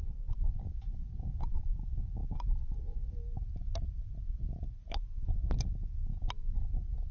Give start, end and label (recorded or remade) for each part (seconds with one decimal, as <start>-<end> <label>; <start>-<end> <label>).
0.0-7.1 recorded